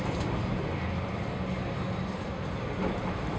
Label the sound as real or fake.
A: real